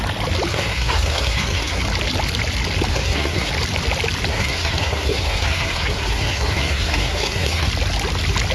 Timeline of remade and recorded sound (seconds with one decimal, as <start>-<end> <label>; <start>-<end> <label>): 0.0-0.5 recorded; 0.5-1.8 remade; 1.8-2.9 recorded; 2.9-3.5 remade; 3.5-4.3 recorded; 4.3-7.7 remade; 7.7-8.5 recorded